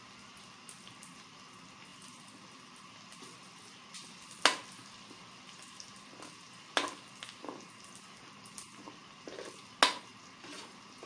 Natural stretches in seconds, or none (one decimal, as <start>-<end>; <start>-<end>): 0.0-11.1